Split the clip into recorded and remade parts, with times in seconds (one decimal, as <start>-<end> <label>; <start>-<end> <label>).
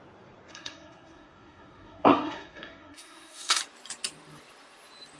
0.0-0.5 recorded; 0.5-3.6 remade; 3.6-5.2 recorded